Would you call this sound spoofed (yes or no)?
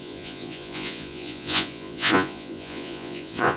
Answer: yes